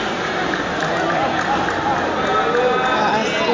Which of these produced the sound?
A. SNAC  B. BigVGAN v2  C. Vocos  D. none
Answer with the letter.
D